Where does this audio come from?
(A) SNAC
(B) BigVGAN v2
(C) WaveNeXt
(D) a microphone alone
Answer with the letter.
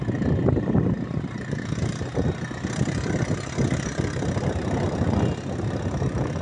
D